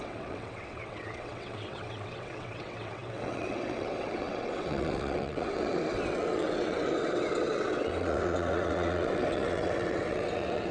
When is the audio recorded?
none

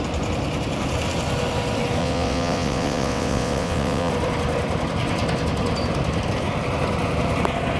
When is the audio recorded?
0.0-2.0; 4.1-7.8

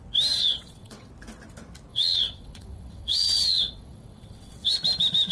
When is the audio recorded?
0.0-0.4; 1.1-1.9; 4.7-5.3

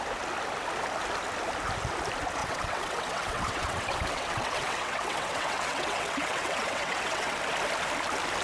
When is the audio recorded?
0.0-2.4; 7.4-8.4

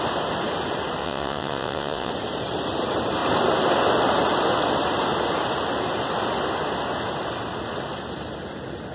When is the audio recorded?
0.0-1.0; 2.1-8.9

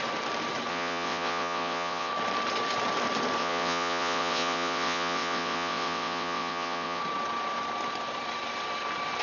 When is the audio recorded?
0.0-0.7; 2.1-3.4; 7.0-9.2